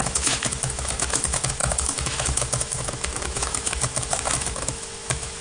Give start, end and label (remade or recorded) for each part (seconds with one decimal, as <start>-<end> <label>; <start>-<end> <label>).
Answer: 0.0-5.4 remade

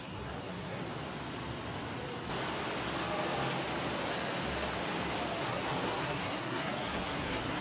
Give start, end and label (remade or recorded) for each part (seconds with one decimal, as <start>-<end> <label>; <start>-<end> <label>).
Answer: 0.0-0.8 remade; 0.8-5.4 recorded; 5.4-7.6 remade